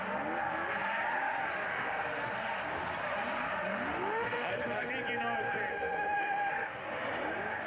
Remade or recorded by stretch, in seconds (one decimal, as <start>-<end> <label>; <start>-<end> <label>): 0.0-1.7 recorded; 1.7-2.3 remade; 2.3-3.7 recorded; 3.7-4.9 remade; 4.9-5.7 recorded; 5.7-6.5 remade; 6.5-7.7 recorded